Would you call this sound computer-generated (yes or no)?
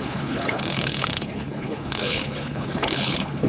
yes